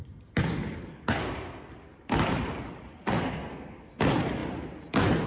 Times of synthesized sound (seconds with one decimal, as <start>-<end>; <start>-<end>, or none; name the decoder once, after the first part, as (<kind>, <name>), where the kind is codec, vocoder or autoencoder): 0.9-1.7 (codec, SNAC); 3.2-3.9